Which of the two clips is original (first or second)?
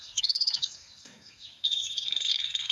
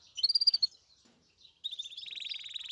second